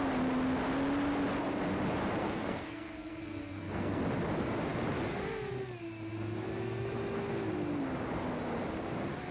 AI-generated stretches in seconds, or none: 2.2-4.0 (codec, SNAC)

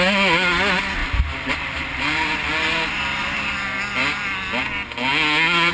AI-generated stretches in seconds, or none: 1.0-3.5 (vocoder, BigVGAN v2)

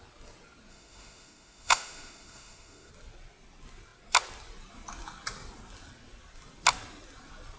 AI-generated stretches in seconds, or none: 0.7-2.9 (autoencoder, DAC-VAE)